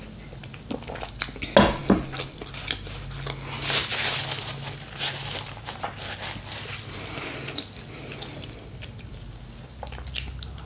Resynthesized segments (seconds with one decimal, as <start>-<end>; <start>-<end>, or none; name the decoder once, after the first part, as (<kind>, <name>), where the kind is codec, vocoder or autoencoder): none